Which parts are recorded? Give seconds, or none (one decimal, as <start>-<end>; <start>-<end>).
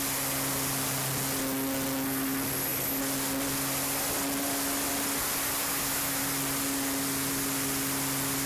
0.0-5.6; 6.2-8.5